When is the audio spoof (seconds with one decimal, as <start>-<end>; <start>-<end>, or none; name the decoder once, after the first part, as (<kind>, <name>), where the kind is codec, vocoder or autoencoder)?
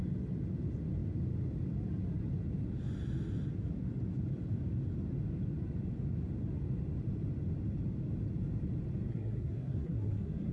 9.1-10.5 (codec, SNAC)